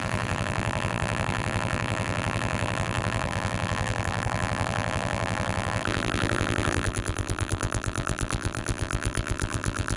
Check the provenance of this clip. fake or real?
fake